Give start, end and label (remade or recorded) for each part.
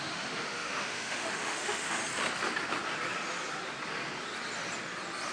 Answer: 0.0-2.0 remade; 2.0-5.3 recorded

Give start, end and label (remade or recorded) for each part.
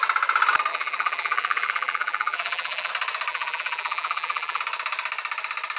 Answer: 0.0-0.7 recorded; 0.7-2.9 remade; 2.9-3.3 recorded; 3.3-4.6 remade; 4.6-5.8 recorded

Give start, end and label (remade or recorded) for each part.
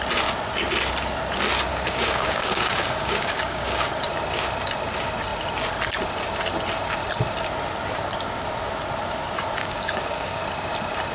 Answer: 0.0-1.7 recorded; 1.7-3.9 remade; 3.9-9.6 recorded; 9.6-10.4 remade; 10.4-11.1 recorded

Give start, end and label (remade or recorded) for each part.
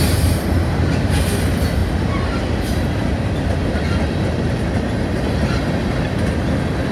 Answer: 0.0-6.9 recorded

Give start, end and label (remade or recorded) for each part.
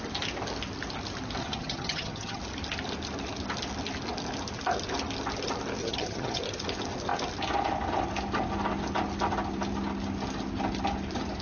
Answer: 0.0-1.4 recorded; 1.4-2.4 remade; 2.4-5.8 recorded; 5.8-6.4 remade; 6.4-11.4 recorded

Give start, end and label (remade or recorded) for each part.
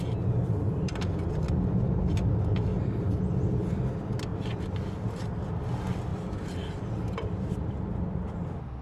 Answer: 0.0-2.7 recorded; 2.7-3.9 remade; 3.9-4.3 recorded; 4.3-4.9 remade; 4.9-8.8 recorded